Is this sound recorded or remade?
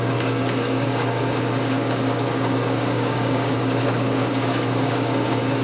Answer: remade